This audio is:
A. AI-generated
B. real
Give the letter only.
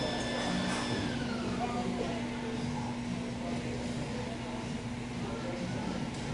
B